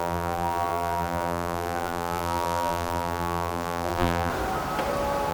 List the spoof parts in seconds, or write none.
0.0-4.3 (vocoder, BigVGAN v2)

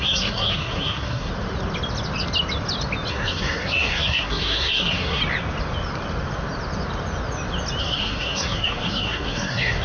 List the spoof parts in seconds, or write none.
0.0-1.3 (codec, SNAC); 3.1-5.2; 7.8-9.8

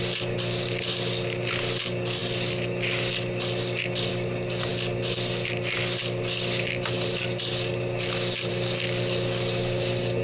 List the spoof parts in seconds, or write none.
none

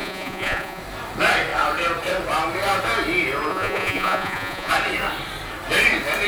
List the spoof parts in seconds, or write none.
0.0-0.8 (vocoder, Vocos); 3.5-4.7

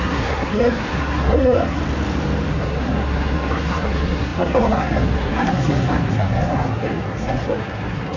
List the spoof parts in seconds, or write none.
0.0-1.8 (codec, SNAC); 2.5-8.2